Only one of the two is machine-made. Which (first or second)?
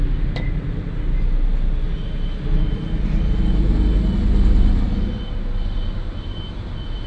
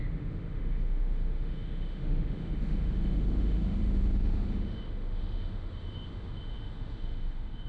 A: second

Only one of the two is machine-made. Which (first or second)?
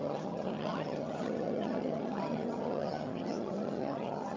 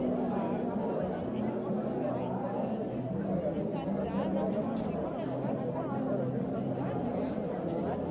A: first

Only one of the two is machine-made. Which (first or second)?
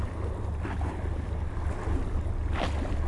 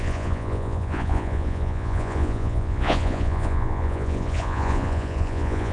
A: second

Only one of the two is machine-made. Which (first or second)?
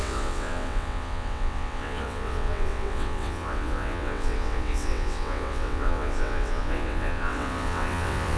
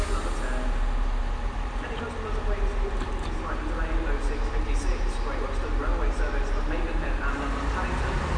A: first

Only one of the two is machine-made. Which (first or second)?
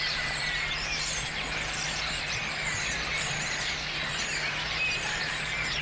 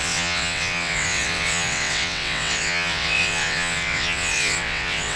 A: second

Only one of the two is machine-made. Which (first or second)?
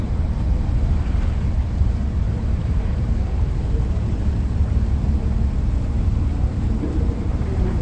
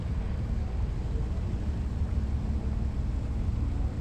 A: first